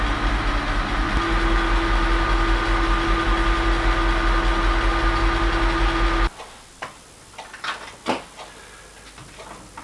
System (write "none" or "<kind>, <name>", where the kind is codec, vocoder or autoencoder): none